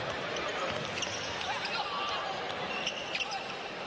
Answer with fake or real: real